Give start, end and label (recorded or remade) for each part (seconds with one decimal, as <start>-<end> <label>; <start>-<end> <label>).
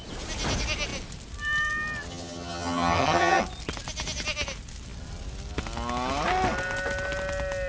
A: 0.0-2.1 recorded; 2.1-3.4 remade; 3.4-7.7 recorded